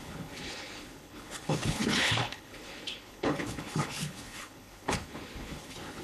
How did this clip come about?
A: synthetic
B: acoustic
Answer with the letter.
A